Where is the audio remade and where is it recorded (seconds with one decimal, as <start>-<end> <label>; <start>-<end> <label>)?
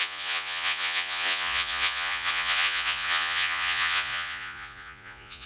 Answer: 0.0-5.5 remade